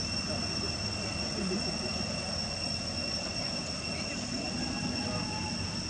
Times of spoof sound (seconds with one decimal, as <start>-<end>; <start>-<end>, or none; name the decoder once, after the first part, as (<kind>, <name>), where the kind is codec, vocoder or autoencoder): none

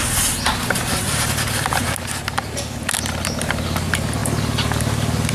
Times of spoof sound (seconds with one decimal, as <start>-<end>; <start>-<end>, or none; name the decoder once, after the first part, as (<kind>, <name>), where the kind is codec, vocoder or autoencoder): none

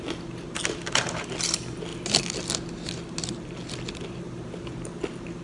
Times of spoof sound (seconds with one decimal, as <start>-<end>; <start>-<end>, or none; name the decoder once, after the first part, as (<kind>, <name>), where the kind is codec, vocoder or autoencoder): none

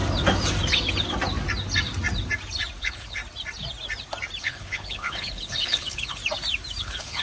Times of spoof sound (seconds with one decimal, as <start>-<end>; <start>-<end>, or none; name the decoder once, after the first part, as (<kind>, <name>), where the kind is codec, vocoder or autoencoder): 2.8-3.2 (codec, HILCodec); 4.4-6.2; 6.8-7.2

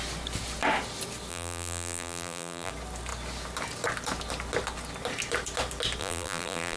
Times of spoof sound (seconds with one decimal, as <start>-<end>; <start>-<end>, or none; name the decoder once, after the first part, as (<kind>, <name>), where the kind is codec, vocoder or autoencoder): 1.3-2.7 (vocoder, BigVGAN v2); 6.0-6.8

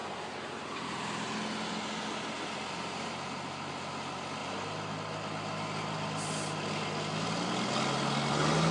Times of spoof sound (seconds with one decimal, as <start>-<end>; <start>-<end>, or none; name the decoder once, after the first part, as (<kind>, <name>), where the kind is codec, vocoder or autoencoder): none

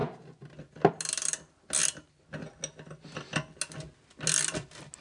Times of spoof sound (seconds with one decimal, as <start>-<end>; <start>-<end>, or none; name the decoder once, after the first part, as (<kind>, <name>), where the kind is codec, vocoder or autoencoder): none

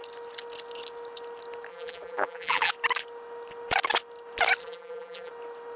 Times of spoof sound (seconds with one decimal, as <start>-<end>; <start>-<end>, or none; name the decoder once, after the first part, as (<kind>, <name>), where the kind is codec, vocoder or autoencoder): 1.7-2.7 (vocoder, BigVGAN v2); 4.6-5.3